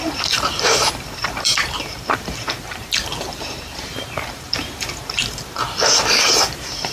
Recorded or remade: remade